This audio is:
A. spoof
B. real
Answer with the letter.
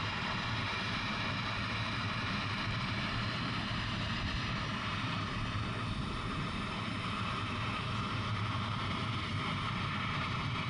A